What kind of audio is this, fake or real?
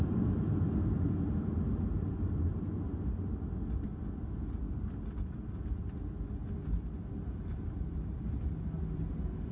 real